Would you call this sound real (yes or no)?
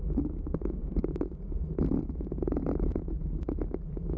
yes